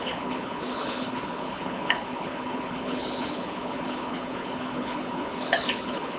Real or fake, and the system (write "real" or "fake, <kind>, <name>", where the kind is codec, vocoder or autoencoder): fake, codec, HILCodec